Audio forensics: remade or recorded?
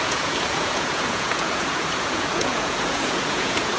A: remade